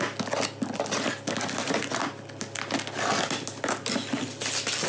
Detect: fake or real real